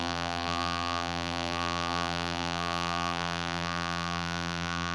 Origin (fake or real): fake